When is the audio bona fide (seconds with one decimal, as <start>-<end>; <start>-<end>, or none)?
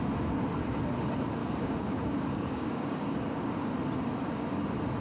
0.0-1.4; 3.7-5.0